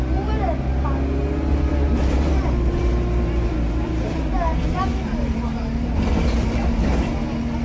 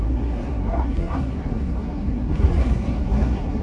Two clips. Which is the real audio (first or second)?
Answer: first